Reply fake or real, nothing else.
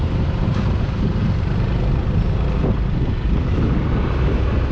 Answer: fake